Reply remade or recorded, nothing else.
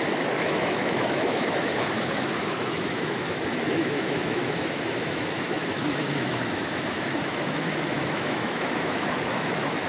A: remade